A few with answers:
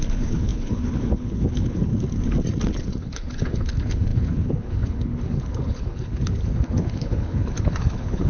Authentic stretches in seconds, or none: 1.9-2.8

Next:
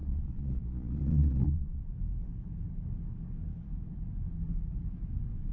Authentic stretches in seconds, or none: 1.8-5.5

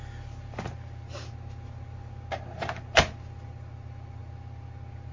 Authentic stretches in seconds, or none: 0.0-5.1

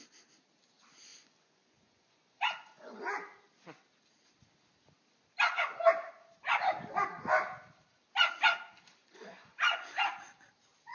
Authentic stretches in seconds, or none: 0.0-1.1; 3.0-9.0; 10.0-10.9

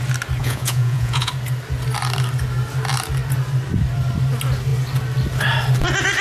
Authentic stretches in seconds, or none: 0.0-0.4; 1.3-6.2